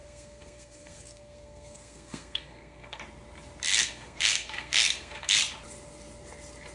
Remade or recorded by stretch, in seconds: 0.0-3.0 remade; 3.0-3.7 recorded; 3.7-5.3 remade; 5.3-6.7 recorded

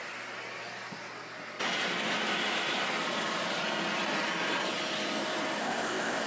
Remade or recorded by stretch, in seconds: 0.0-5.6 recorded; 5.6-6.3 remade

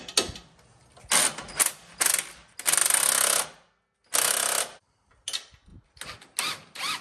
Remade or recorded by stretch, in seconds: 0.0-0.4 remade; 0.4-2.3 recorded; 2.3-2.8 remade; 2.8-4.6 recorded; 4.6-5.7 remade; 5.7-6.4 recorded; 6.4-7.0 remade